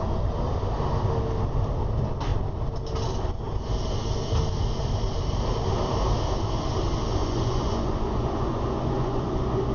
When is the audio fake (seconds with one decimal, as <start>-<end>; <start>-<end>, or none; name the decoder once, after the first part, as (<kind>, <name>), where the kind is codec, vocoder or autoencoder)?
7.2-9.7 (vocoder, Vocos)